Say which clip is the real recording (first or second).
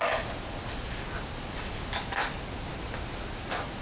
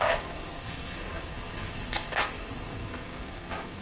first